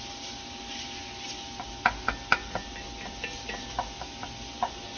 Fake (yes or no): no